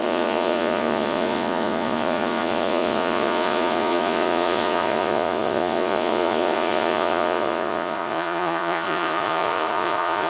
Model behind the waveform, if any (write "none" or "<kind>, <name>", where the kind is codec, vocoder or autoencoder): vocoder, Vocos